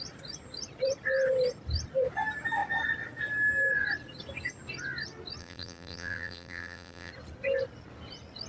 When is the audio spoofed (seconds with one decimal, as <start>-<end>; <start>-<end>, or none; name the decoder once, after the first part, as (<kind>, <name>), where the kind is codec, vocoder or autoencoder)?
5.4-7.1 (vocoder, BigVGAN v2)